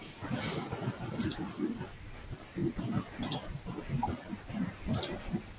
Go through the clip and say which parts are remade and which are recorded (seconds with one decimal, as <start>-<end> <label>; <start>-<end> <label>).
0.0-0.9 remade; 0.9-5.6 recorded